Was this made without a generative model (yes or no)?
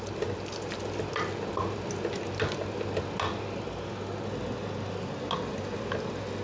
yes